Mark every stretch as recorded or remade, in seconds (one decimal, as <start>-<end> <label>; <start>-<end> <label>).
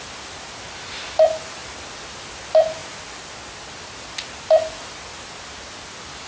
0.0-6.3 recorded